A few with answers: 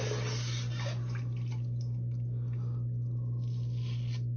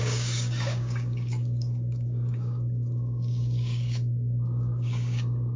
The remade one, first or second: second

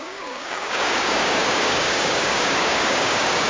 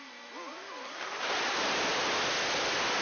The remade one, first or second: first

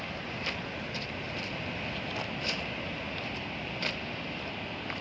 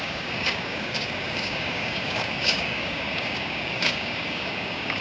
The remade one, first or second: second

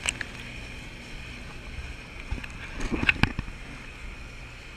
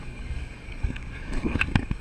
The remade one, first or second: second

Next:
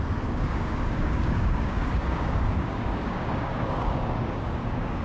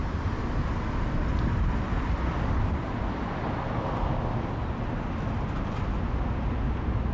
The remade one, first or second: first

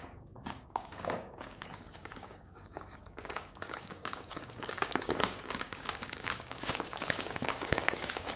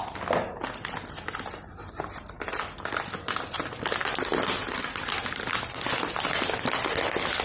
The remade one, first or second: first